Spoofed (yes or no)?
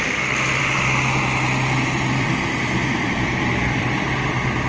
yes